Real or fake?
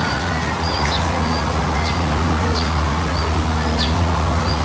fake